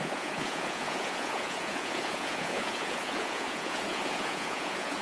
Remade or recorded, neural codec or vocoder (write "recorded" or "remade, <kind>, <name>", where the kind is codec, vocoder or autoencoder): remade, vocoder, Vocos